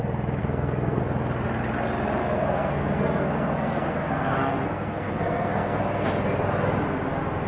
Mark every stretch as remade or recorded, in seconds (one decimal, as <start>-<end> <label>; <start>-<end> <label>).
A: 0.0-0.4 recorded; 0.4-1.0 remade; 1.0-2.2 recorded; 2.2-6.1 remade; 6.1-7.5 recorded